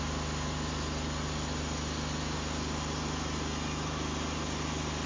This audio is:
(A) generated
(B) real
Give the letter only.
B